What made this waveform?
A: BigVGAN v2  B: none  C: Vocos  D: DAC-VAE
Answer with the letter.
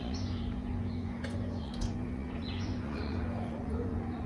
C